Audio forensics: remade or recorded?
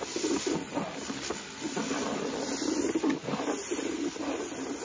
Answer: recorded